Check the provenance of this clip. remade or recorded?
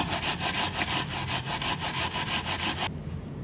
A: recorded